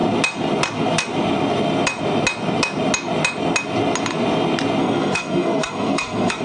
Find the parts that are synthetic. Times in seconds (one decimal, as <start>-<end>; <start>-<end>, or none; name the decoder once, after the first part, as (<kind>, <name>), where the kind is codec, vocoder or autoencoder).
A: 4.8-6.4 (codec, SNAC)